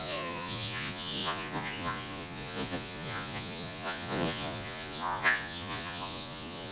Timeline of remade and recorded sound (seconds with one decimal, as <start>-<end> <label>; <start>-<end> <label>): 0.0-6.7 remade